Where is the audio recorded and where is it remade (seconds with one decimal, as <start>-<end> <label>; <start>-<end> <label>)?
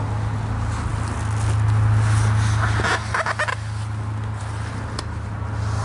0.0-5.8 recorded